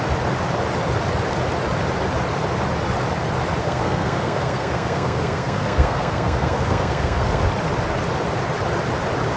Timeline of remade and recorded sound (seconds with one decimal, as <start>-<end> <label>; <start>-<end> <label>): 0.0-3.6 recorded; 3.6-7.4 remade; 7.4-9.4 recorded